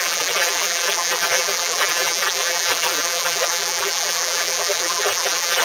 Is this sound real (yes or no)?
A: no